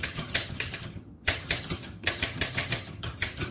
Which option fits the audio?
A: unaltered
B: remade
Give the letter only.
B